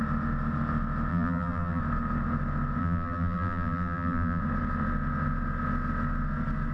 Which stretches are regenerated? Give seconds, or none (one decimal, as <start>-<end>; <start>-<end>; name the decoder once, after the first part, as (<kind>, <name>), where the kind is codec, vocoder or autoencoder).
1.1-1.8 (vocoder, BigVGAN v2); 2.8-4.4